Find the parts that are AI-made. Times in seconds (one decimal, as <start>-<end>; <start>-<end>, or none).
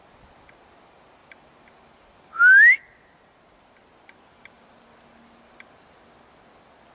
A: none